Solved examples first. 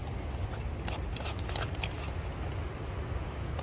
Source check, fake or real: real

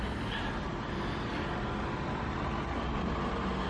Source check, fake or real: real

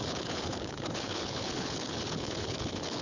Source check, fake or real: fake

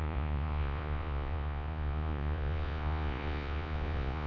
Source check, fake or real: fake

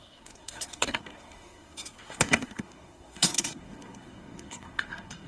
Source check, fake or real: fake